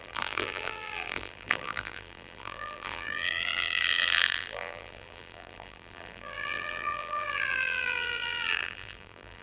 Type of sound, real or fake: fake